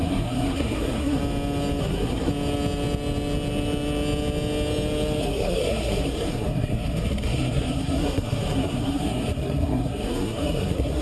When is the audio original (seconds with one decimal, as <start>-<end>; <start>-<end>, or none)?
1.2-1.8; 2.3-5.2